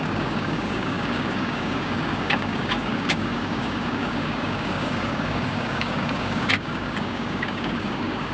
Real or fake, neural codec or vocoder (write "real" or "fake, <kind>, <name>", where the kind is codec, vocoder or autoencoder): fake, codec, DAC